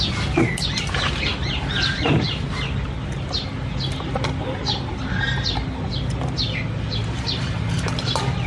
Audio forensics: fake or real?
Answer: real